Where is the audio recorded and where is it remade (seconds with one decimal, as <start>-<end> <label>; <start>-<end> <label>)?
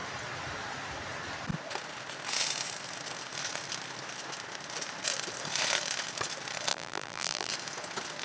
0.0-6.7 recorded; 6.7-7.5 remade; 7.5-8.2 recorded